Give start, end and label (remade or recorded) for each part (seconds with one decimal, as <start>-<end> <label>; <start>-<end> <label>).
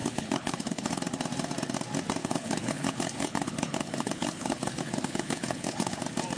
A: 0.0-1.0 remade; 1.0-2.2 recorded; 2.2-6.0 remade; 6.0-6.4 recorded